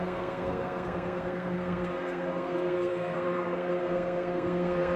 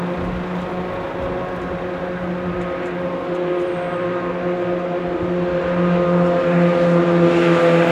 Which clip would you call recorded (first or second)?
second